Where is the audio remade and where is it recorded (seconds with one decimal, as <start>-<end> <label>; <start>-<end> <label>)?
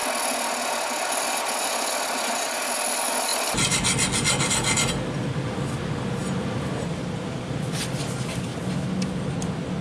0.0-9.8 recorded